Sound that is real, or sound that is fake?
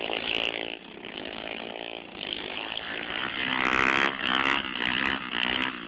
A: fake